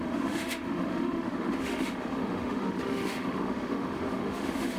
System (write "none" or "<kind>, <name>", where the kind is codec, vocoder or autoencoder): autoencoder, DAC-VAE